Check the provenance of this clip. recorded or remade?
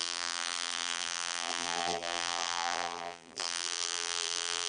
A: remade